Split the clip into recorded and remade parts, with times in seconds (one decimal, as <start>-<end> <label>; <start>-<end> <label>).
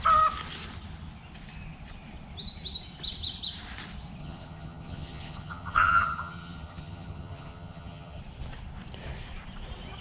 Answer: 0.0-4.2 recorded; 4.2-8.2 remade; 8.2-10.0 recorded